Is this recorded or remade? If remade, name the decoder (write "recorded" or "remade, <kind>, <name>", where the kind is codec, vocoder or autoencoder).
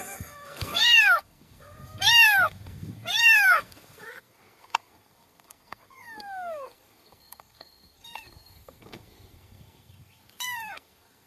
remade, codec, SNAC